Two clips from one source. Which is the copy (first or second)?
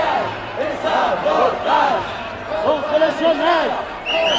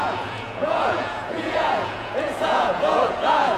second